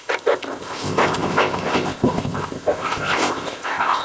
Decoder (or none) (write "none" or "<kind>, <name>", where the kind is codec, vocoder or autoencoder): codec, ZipCodec